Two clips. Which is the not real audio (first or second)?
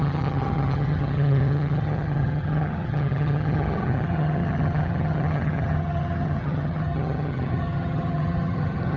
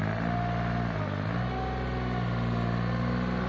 first